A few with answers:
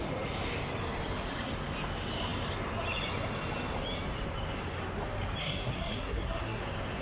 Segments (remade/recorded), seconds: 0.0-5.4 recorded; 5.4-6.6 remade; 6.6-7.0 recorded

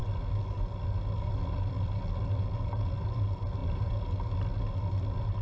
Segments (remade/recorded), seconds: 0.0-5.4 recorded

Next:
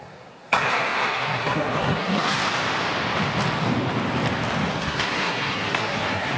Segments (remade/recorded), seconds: 0.0-2.4 remade; 2.4-4.7 recorded; 4.7-6.4 remade

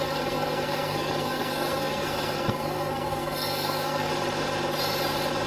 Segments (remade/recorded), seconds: 0.0-4.1 remade; 4.1-5.5 recorded

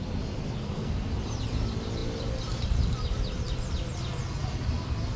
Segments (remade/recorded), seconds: 0.0-0.6 recorded; 0.6-1.1 remade; 1.1-5.2 recorded

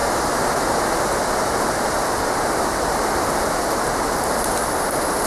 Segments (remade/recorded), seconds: 0.0-5.3 recorded

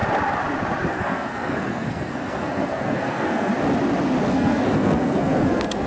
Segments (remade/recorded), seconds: 0.0-0.9 recorded; 0.9-3.5 remade; 3.5-4.3 recorded; 4.3-5.9 remade

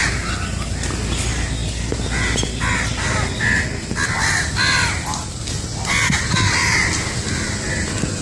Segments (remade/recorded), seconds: 0.0-8.2 recorded